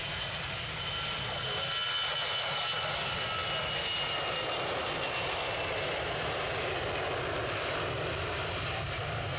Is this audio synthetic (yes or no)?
no